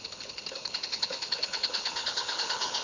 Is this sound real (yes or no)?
no